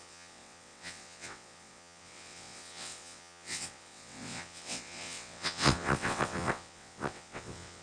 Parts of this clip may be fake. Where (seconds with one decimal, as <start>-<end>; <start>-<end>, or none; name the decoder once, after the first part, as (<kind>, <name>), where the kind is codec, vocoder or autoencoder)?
0.0-7.8 (vocoder, WaveNeXt)